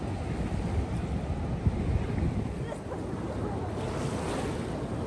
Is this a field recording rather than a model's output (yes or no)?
yes